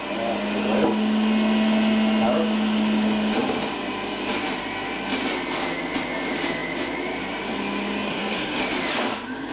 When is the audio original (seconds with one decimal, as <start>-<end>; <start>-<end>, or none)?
0.0-8.1; 8.6-9.5